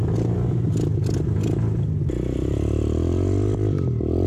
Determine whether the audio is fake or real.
real